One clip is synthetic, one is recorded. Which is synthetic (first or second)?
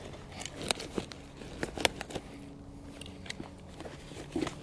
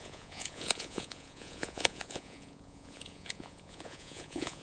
second